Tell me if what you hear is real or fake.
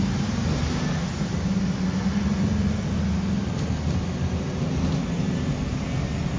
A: real